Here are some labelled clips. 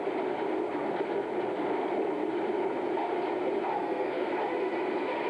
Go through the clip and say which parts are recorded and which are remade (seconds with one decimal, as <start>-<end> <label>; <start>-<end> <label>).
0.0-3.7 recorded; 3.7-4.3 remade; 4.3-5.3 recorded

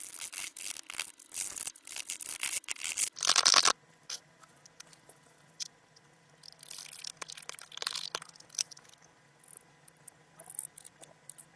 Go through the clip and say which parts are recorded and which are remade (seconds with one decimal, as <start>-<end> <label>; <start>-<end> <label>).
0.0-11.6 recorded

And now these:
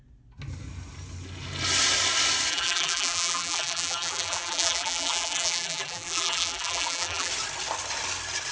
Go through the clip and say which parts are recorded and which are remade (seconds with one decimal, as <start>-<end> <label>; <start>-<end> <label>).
0.0-2.5 recorded; 2.5-7.3 remade; 7.3-8.5 recorded

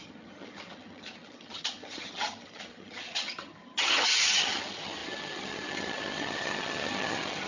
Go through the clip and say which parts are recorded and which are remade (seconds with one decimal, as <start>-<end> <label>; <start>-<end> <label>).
0.0-7.5 remade

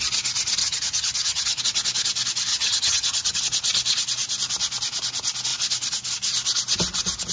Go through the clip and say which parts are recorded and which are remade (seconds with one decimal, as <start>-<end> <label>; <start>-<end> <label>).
0.0-0.6 recorded; 0.6-1.6 remade; 1.6-2.5 recorded; 2.5-3.4 remade; 3.4-7.3 recorded